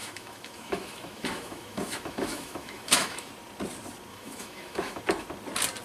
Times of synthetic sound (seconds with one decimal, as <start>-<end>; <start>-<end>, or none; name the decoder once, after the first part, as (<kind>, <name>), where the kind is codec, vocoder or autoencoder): 0.0-3.3 (autoencoder, DAC-VAE); 4.1-5.0